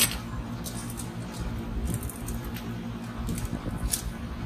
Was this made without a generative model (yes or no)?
yes